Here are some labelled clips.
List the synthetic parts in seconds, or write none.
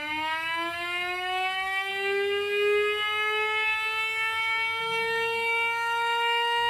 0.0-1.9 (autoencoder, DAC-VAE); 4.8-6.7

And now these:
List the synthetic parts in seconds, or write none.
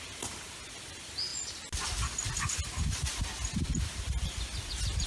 none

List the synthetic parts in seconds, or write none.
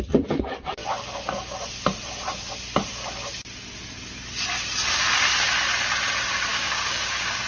6.5-7.5 (codec, DAC)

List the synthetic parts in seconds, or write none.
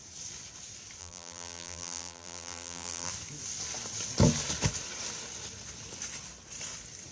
1.0-3.1 (vocoder, BigVGAN v2)